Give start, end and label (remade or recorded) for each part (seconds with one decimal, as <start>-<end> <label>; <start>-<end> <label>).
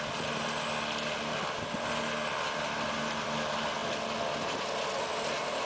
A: 0.0-5.7 recorded